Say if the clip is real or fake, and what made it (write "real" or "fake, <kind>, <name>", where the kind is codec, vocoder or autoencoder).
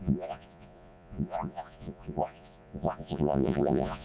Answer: fake, vocoder, Vocos